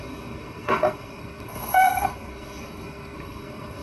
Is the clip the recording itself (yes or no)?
no